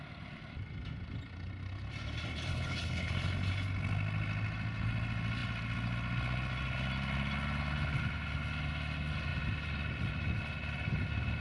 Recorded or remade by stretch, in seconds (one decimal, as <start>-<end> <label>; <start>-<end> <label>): 0.0-2.5 recorded; 2.5-3.1 remade; 3.1-11.4 recorded